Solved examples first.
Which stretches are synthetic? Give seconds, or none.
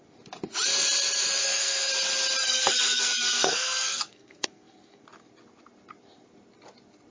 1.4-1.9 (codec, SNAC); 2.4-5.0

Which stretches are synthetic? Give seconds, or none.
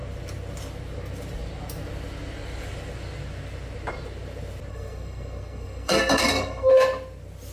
4.7-6.7 (codec, SNAC)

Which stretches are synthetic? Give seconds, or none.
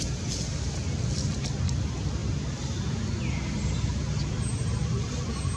none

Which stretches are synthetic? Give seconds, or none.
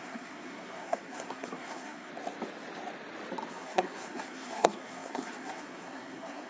0.0-2.1 (codec, SNAC); 3.5-6.5